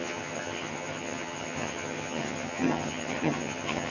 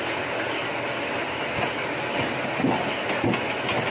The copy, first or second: first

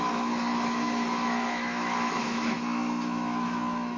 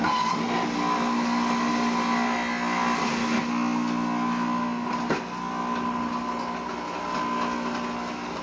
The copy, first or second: first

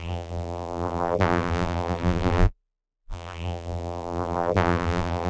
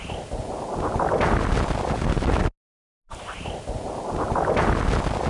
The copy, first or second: first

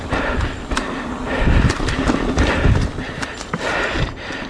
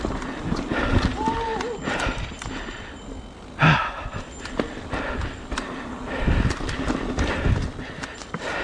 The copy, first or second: first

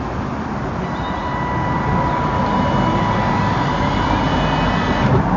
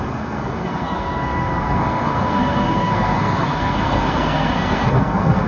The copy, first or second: second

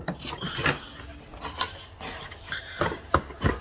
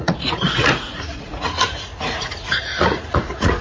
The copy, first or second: second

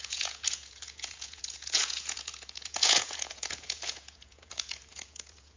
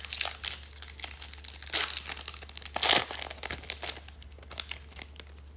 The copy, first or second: first